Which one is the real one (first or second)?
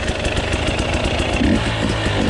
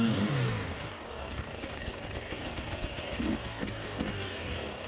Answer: first